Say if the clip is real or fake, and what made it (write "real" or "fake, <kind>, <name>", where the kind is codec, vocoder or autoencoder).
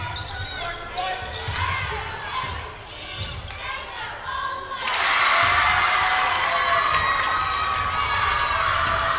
real